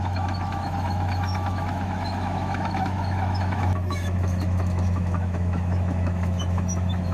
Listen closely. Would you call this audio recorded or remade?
remade